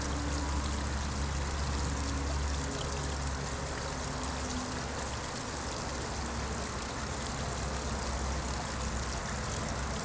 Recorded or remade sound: recorded